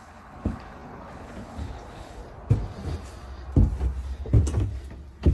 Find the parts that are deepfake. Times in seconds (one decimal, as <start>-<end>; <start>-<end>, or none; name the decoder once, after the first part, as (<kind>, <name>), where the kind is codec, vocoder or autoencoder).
0.0-2.2 (codec, HILCodec)